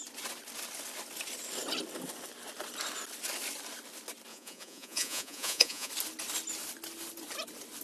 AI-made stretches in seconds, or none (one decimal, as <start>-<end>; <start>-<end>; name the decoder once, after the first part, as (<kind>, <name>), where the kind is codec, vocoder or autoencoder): 4.3-5.9 (vocoder, Vocos)